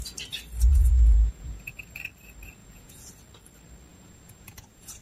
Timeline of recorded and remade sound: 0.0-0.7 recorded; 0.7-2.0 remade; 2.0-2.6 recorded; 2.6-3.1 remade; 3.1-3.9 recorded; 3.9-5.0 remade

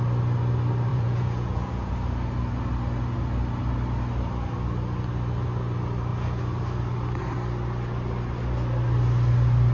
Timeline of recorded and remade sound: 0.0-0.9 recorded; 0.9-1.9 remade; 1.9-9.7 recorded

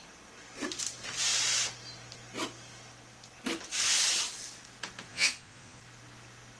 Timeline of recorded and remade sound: 0.0-5.1 recorded; 5.1-5.8 remade; 5.8-6.6 recorded

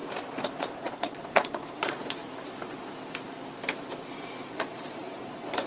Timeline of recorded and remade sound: 0.0-0.6 recorded; 0.6-2.2 remade; 2.2-4.5 recorded; 4.5-5.7 remade

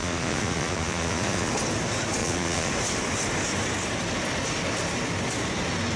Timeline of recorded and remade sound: 0.0-1.5 remade; 1.5-2.2 recorded; 2.2-2.7 remade; 2.7-6.0 recorded